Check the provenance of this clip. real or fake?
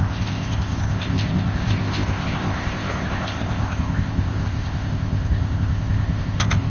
fake